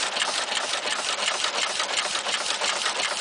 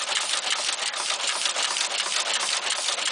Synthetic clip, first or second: first